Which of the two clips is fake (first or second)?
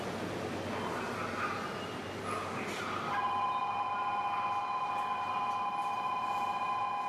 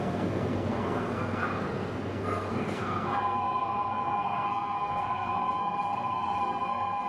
second